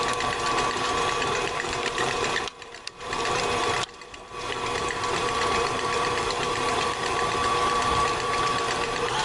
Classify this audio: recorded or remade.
remade